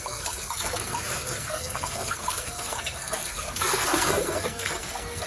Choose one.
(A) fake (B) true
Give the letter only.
A